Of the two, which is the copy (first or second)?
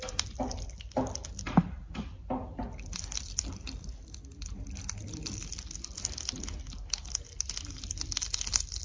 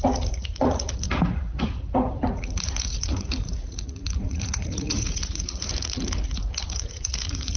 second